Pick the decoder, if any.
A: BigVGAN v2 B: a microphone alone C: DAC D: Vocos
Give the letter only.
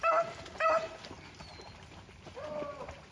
B